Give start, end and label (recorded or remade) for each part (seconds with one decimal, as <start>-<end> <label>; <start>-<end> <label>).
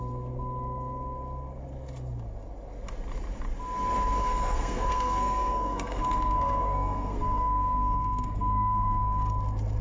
0.0-4.2 recorded; 4.2-9.3 remade; 9.3-9.8 recorded